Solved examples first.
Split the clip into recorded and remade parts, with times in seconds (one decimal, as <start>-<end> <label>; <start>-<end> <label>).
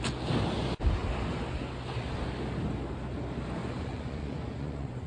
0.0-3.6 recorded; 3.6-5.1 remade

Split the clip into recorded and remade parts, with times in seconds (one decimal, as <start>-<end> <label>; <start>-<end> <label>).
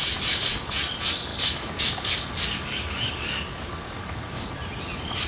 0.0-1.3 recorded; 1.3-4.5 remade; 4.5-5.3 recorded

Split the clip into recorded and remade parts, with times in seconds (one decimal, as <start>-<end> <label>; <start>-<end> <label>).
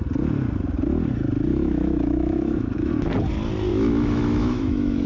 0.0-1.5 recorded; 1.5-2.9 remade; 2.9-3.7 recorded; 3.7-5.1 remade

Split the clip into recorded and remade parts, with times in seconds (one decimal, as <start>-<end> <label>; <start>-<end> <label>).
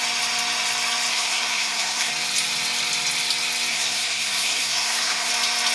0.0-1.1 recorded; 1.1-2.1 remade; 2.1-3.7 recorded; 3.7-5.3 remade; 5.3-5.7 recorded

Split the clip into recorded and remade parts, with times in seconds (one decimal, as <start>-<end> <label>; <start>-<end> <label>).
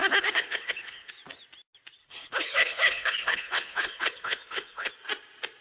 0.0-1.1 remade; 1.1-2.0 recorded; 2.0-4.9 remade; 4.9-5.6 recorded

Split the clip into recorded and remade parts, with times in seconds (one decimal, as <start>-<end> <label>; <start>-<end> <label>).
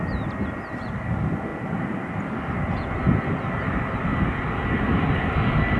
0.0-5.8 recorded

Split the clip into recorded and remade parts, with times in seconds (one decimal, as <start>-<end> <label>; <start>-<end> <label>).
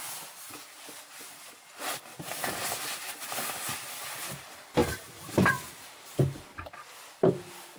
0.0-2.1 recorded; 2.1-2.8 remade; 2.8-7.8 recorded